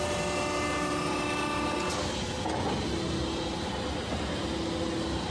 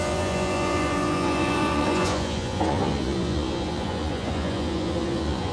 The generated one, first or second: second